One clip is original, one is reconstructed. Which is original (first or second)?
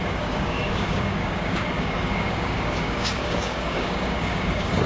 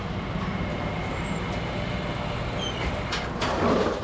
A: second